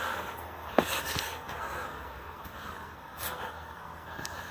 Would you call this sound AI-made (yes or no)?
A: yes